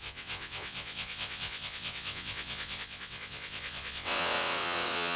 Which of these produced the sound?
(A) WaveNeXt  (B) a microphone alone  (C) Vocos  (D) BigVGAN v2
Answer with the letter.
A